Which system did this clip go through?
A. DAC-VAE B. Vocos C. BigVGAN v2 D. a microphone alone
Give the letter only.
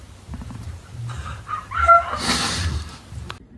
C